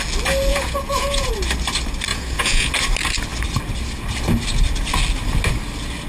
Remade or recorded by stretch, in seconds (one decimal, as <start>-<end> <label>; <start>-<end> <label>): 0.0-0.5 recorded; 0.5-1.3 remade; 1.3-2.1 recorded; 2.1-2.7 remade; 2.7-6.1 recorded